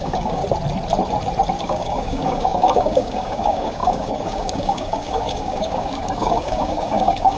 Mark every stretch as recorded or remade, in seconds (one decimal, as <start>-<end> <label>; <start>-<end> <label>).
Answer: 0.0-0.4 remade; 0.4-1.6 recorded; 1.6-7.4 remade